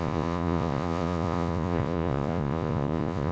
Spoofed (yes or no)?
yes